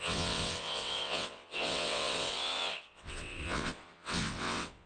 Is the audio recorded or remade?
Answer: remade